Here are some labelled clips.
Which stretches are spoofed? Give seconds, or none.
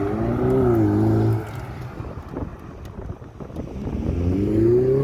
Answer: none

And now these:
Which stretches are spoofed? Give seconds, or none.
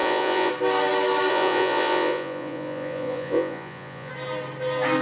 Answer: 0.0-0.5 (vocoder, Vocos); 1.3-4.1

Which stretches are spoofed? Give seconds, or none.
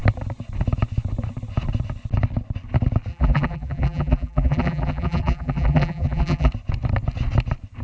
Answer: 3.1-6.5 (vocoder, BigVGAN v2)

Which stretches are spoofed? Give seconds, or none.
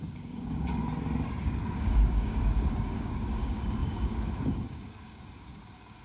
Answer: 0.0-0.8 (codec, DAC); 1.4-6.0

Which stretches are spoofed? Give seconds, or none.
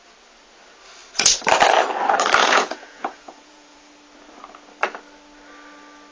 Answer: 2.4-3.9 (vocoder, Vocos)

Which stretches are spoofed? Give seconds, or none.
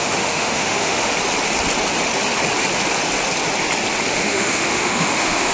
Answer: 0.0-1.1 (autoencoder, DAC-VAE); 4.1-5.5